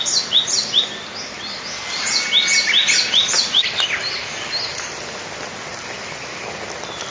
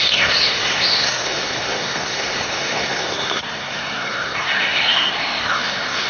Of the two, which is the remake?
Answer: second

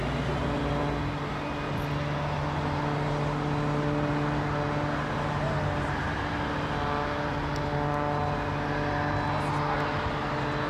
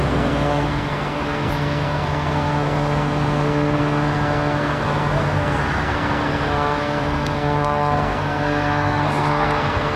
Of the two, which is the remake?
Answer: second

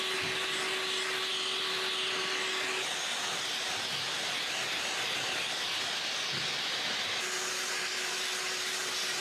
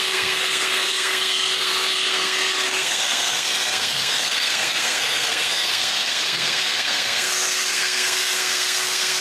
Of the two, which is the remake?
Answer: second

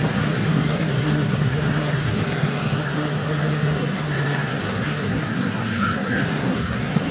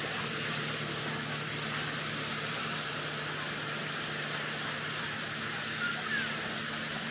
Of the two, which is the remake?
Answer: first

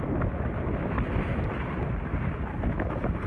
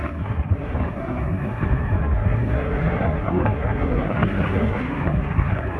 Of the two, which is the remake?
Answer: second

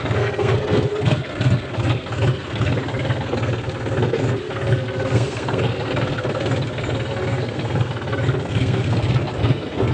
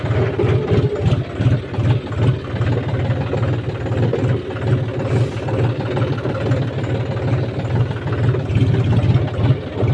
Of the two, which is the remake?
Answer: first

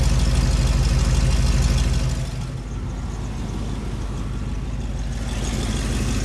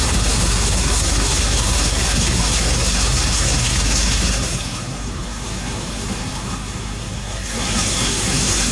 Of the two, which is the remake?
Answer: second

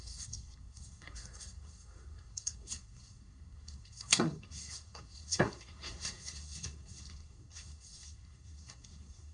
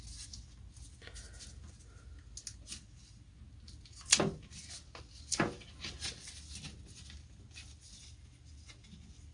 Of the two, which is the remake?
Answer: first